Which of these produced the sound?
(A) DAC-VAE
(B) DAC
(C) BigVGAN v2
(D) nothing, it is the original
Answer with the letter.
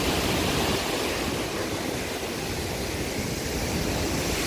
D